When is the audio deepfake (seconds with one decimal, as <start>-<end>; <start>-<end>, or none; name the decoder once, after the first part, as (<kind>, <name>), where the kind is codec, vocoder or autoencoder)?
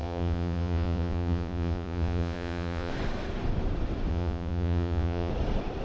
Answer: 0.0-2.9 (vocoder, Vocos); 4.1-5.3